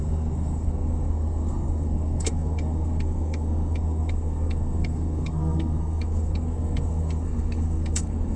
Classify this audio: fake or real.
fake